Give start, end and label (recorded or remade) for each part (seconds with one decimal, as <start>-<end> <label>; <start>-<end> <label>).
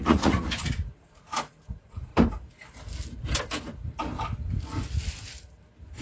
0.0-2.1 remade; 2.1-6.0 recorded